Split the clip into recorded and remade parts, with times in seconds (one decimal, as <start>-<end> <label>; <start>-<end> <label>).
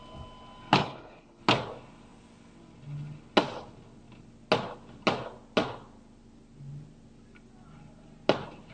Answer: 0.0-0.8 recorded; 0.8-1.4 remade; 1.4-8.7 recorded